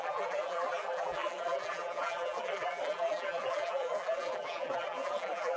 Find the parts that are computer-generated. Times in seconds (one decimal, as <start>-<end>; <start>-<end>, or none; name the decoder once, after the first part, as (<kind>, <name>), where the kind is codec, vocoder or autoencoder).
0.0-5.6 (vocoder, BigVGAN v2)